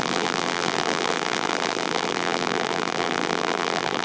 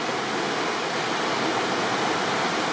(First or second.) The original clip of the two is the second